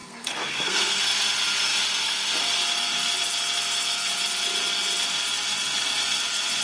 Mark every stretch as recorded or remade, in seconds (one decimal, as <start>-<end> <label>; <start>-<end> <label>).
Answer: 0.0-1.0 remade; 1.0-6.6 recorded